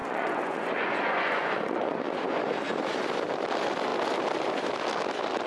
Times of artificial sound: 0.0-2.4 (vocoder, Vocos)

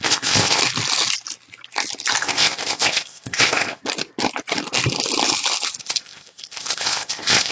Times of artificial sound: 0.0-0.6 (codec, ZipCodec); 2.2-3.8; 5.8-7.5

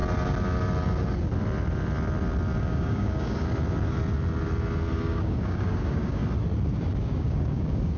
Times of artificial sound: 2.6-3.4 (codec, DAC); 4.9-6.2; 6.9-8.0

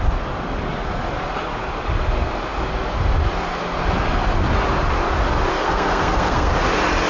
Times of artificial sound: 5.5-6.5 (codec, SNAC)

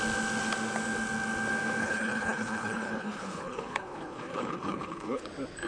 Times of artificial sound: 1.8-5.2 (codec, HILCodec)

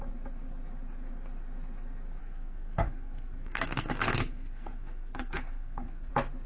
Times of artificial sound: 2.2-6.1 (codec, SNAC)